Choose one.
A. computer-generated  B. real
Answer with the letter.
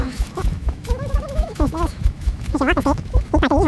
A